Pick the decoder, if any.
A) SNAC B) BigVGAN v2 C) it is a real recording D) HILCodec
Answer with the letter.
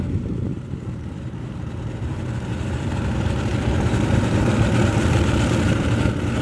B